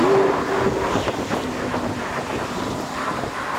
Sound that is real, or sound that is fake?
real